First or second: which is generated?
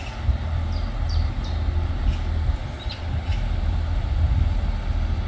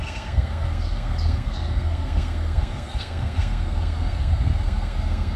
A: second